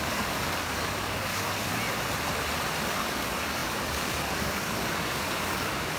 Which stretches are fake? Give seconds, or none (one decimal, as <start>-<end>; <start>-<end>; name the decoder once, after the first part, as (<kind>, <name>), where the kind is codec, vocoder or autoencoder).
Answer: 0.0-1.7 (codec, DAC); 2.8-6.0